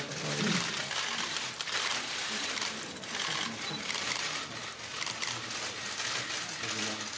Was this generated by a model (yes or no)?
no